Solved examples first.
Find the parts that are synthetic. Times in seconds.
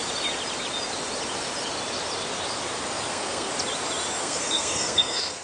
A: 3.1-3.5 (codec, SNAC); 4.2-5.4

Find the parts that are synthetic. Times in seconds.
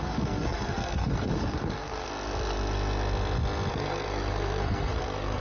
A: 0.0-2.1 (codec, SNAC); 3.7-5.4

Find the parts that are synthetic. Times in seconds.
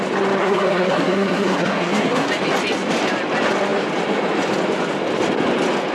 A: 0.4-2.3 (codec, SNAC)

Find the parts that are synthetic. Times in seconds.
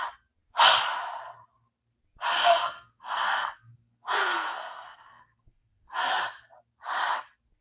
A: 2.4-6.1 (codec, SNAC)